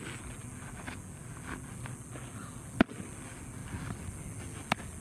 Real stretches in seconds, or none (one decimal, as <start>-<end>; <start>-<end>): 0.0-5.0